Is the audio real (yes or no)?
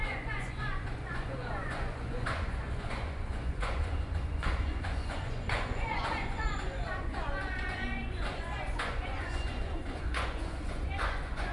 no